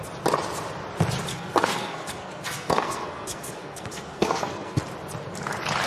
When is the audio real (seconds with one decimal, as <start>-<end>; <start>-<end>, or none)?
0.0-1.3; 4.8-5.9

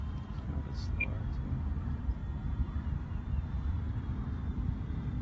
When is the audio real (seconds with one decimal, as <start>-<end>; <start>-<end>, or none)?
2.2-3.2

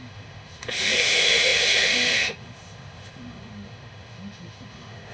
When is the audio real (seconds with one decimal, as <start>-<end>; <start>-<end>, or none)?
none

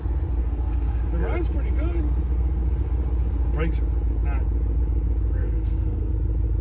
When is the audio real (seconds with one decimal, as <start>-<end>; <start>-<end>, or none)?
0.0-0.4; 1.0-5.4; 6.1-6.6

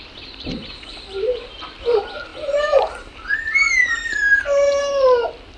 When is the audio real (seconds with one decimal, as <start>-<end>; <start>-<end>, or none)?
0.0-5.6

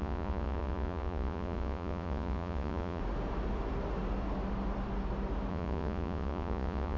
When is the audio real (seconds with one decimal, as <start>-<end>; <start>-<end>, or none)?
3.0-5.5